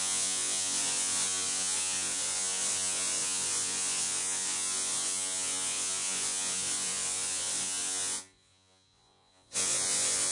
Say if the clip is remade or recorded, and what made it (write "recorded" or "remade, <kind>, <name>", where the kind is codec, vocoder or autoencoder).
remade, vocoder, Vocos